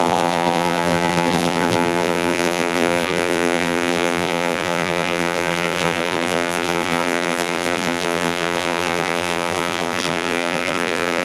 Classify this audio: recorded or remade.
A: remade